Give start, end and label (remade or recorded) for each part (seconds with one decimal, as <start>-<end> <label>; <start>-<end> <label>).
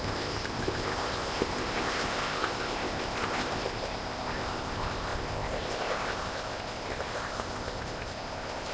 0.0-8.7 remade